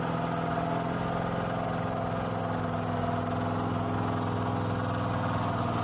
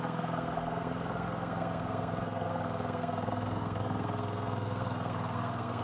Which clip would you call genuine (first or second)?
first